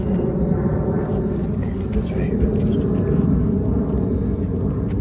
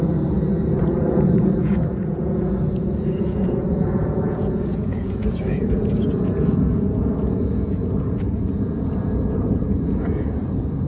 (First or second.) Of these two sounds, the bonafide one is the first